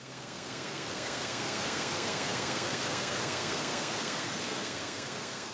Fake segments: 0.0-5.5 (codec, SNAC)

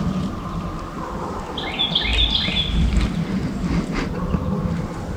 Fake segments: 2.1-4.3 (vocoder, BigVGAN v2)

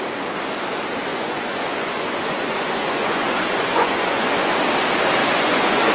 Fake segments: 1.1-4.6 (vocoder, Vocos); 5.2-5.9

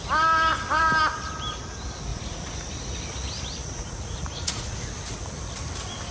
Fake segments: 2.1-3.0 (vocoder, Vocos); 3.6-4.8

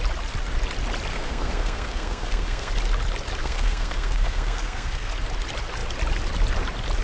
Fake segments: 1.1-2.7 (codec, SNAC); 3.4-5.1

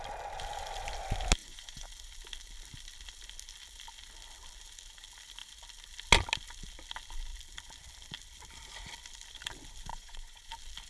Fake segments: 1.4-1.9 (vocoder, Vocos); 9.9-10.5